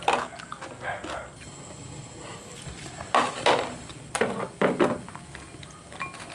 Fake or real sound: real